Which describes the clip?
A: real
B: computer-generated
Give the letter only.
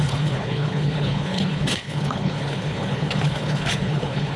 B